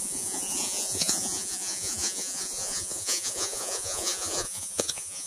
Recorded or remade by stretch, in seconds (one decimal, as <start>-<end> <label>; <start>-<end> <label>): 0.0-5.3 remade